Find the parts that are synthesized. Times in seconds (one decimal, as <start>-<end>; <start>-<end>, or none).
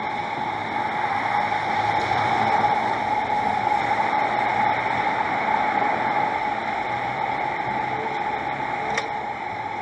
0.0-0.6; 2.0-9.8